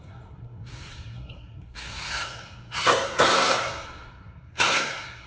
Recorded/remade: remade